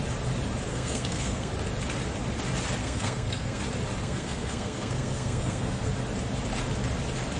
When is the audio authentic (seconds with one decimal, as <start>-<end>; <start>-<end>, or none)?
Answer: 0.0-0.7; 1.5-2.8; 3.6-4.0; 5.9-7.4